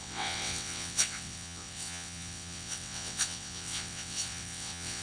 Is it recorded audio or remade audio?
remade